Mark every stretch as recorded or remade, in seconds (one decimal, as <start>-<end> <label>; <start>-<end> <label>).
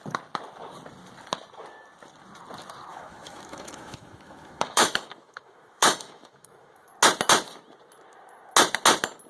0.0-2.9 recorded; 2.9-6.9 remade; 6.9-9.3 recorded